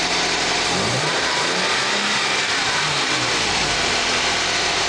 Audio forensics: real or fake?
fake